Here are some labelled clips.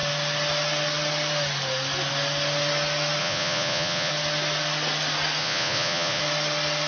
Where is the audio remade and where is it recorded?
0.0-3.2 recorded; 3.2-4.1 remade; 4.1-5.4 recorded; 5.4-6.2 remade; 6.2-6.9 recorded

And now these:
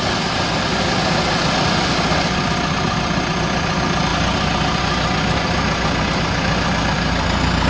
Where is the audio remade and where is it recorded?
0.0-7.7 recorded

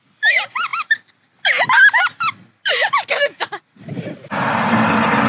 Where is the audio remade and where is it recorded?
0.0-5.3 recorded

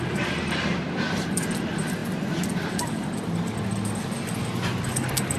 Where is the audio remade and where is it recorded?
0.0-5.4 recorded

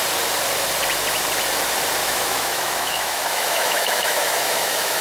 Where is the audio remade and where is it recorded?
0.0-2.0 recorded; 2.0-5.0 remade

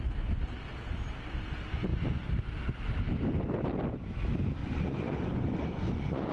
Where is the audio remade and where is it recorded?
0.0-4.6 recorded; 4.6-6.3 remade

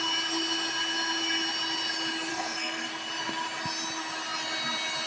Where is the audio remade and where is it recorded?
0.0-2.3 recorded; 2.3-2.9 remade; 2.9-5.1 recorded